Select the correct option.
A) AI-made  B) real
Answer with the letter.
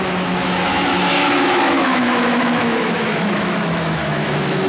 A